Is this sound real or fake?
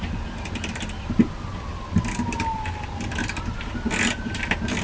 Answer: real